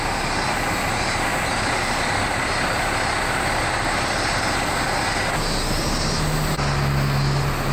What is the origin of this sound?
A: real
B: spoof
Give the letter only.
A